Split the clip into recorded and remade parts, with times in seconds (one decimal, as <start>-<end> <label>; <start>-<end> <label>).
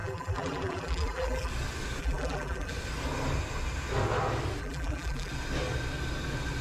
0.0-1.5 remade; 1.5-2.0 recorded; 2.0-2.7 remade; 2.7-4.6 recorded; 4.6-5.3 remade; 5.3-6.6 recorded